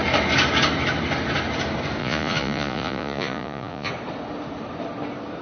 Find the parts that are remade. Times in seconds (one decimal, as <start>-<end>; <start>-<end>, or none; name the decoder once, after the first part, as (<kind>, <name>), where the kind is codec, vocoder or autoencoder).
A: 2.0-3.9 (vocoder, Vocos)